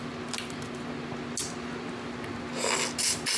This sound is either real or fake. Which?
real